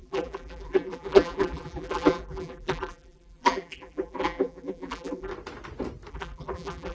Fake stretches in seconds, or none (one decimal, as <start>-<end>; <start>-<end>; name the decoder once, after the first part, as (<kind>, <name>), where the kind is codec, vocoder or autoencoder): 0.0-5.3 (vocoder, BigVGAN v2); 6.1-6.9